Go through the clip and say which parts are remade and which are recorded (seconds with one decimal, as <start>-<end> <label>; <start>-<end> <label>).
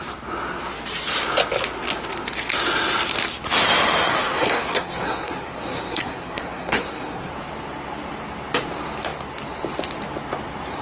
0.0-4.1 recorded; 4.1-7.3 remade; 7.3-10.8 recorded